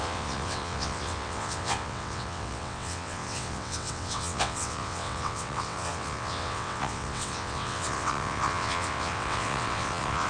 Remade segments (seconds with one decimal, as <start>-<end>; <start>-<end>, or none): 0.0-10.3